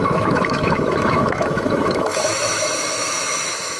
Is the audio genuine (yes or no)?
no